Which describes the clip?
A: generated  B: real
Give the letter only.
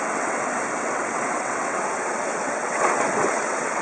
A